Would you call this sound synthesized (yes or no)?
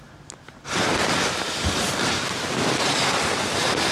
no